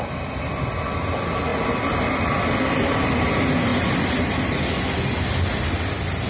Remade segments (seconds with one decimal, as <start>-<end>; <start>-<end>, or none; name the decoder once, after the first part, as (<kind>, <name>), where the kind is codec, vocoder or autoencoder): none